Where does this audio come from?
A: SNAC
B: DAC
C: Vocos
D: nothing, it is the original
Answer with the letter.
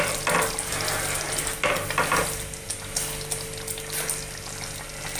D